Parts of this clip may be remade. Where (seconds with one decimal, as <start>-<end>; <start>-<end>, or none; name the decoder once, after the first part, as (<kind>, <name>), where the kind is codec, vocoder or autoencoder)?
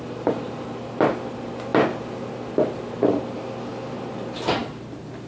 none